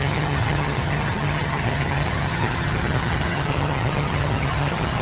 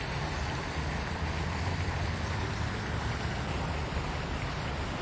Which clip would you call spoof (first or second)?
first